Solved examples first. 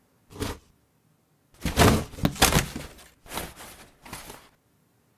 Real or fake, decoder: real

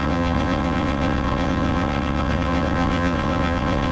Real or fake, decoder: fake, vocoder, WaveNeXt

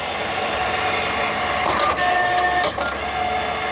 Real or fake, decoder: real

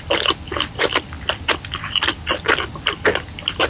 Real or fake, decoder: real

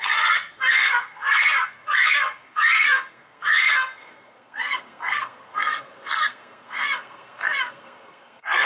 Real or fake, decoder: fake, codec, SNAC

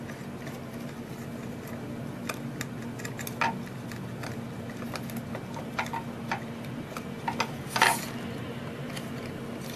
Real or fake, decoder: real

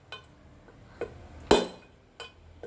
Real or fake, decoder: real